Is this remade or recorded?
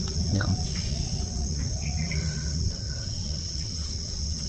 remade